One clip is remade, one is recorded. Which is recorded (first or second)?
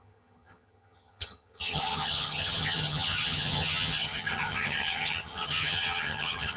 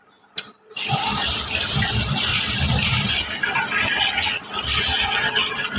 second